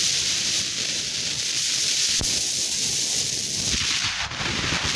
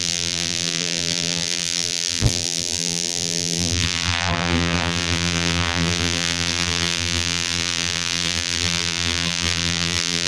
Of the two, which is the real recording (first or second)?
first